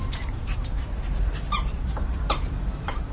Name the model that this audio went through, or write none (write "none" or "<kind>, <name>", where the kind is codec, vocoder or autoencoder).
vocoder, BigVGAN v2